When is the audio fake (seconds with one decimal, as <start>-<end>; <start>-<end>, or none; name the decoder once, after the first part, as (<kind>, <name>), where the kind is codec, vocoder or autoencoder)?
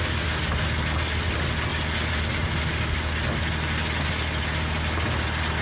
none